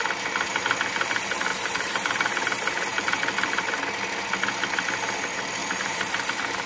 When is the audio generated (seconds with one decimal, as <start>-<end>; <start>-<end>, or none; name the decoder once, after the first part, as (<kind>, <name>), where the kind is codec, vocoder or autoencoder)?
1.5-2.3 (vocoder, BigVGAN v2); 2.9-3.8; 5.6-6.1